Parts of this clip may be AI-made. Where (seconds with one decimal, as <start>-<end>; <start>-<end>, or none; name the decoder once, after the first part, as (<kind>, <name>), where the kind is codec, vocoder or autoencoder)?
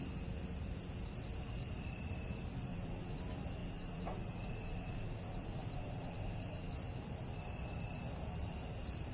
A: 2.7-3.2 (vocoder, Vocos); 3.6-6.7